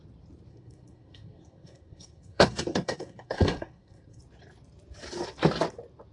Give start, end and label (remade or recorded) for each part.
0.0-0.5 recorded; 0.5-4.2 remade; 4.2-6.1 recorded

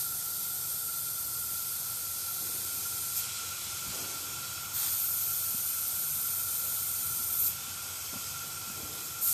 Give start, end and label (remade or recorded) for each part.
0.0-9.3 recorded

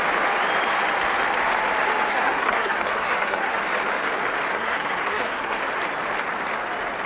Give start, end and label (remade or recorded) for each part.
0.0-2.1 recorded; 2.1-3.6 remade; 3.6-4.5 recorded; 4.5-5.6 remade; 5.6-7.1 recorded